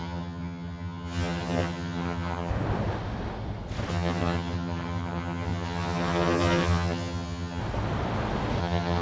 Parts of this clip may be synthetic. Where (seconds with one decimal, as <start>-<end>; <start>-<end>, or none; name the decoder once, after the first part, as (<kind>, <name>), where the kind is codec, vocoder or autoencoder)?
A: 0.0-2.5 (vocoder, HiFi-GAN); 3.9-7.6; 8.6-9.0